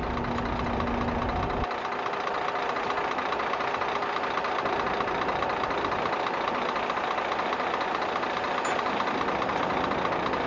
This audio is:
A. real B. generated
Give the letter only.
A